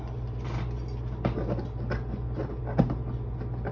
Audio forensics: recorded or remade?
recorded